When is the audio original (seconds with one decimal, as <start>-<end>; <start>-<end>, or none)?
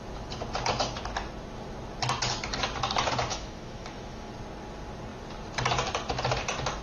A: 0.0-3.3; 4.3-6.8